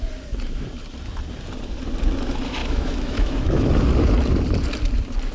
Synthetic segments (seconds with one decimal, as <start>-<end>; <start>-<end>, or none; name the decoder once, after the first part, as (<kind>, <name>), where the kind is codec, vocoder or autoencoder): 2.6-3.7 (autoencoder, DAC-VAE)